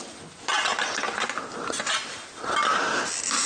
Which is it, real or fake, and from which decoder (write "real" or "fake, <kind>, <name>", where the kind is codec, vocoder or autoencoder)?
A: real